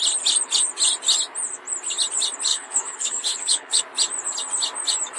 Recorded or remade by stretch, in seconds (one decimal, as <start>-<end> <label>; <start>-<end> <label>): 0.0-2.5 recorded; 2.5-3.8 remade; 3.8-5.2 recorded